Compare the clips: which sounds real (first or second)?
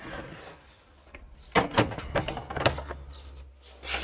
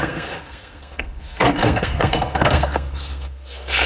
first